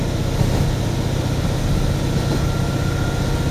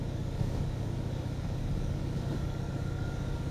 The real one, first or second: first